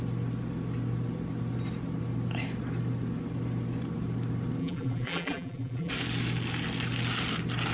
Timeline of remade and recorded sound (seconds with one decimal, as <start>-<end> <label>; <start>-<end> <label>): 0.0-4.6 recorded; 4.6-5.9 remade; 5.9-7.7 recorded